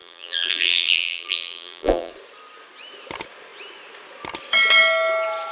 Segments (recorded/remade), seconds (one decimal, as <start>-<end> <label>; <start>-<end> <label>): 0.0-2.1 remade; 2.1-5.5 recorded